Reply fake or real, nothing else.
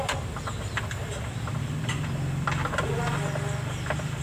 fake